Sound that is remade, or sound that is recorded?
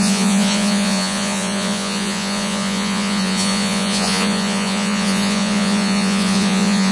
remade